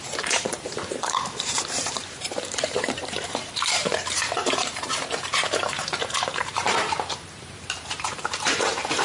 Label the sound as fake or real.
fake